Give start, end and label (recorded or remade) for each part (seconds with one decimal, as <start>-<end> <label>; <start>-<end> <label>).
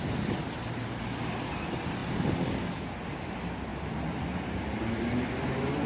0.0-2.0 recorded; 2.0-2.5 remade; 2.5-5.9 recorded